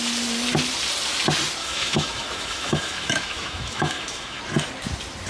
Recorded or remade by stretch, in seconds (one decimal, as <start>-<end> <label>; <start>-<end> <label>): 0.0-1.6 recorded; 1.6-4.4 remade; 4.4-5.3 recorded